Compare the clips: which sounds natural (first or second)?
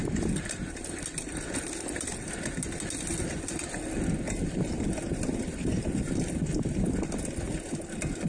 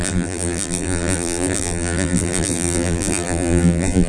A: first